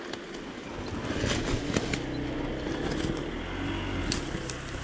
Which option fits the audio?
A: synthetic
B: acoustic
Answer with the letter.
B